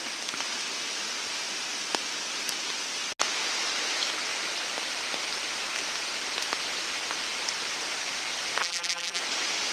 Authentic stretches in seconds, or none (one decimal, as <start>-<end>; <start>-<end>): 0.0-8.6; 9.2-9.7